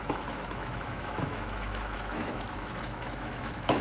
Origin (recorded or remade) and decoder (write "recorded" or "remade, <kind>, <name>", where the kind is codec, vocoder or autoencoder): remade, autoencoder, DAC-VAE